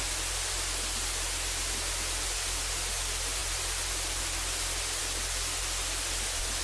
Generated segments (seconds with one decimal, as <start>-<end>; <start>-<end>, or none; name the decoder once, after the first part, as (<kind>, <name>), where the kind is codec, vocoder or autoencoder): none